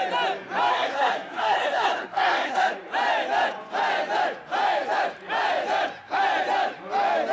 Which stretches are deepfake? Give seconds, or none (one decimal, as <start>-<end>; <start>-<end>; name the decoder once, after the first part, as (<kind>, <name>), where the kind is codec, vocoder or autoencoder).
0.7-2.7 (codec, SNAC)